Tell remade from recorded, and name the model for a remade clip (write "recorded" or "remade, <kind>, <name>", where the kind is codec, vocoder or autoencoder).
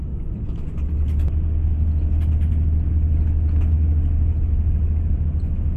recorded